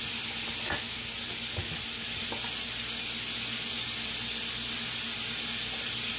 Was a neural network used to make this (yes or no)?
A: no